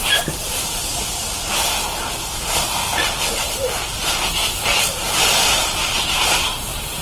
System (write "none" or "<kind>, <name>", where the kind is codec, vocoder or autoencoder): none